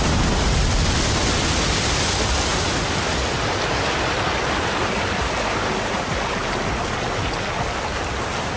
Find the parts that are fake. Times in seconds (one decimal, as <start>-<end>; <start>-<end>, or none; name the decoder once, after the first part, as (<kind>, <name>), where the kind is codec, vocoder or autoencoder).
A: none